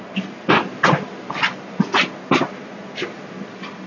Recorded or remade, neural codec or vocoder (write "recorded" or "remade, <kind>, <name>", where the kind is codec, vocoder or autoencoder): recorded